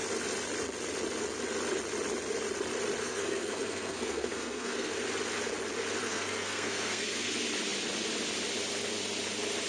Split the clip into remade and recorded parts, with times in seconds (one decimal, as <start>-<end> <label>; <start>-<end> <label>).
0.0-3.0 recorded; 3.0-4.9 remade; 4.9-6.0 recorded; 6.0-7.3 remade; 7.3-9.7 recorded